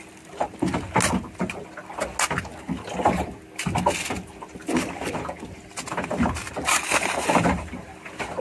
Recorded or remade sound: recorded